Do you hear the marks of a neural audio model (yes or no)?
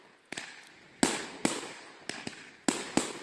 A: no